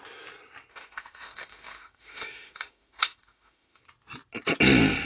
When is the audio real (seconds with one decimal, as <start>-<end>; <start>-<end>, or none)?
0.0-0.7; 3.8-5.1